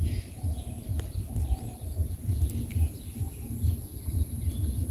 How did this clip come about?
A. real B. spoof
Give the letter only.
A